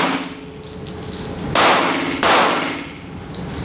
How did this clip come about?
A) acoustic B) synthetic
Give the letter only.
A